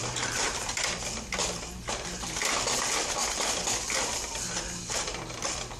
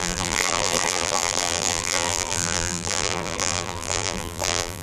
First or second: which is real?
first